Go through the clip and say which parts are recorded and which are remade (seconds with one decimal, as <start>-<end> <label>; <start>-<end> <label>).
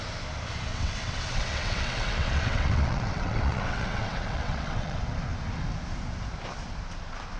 0.0-0.7 recorded; 0.7-5.1 remade; 5.1-7.4 recorded